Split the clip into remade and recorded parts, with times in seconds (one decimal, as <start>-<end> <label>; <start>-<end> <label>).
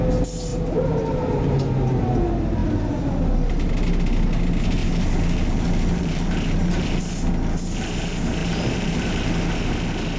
0.0-0.5 recorded; 0.5-1.6 remade; 1.6-4.8 recorded; 4.8-7.0 remade; 7.0-8.4 recorded; 8.4-9.4 remade; 9.4-10.2 recorded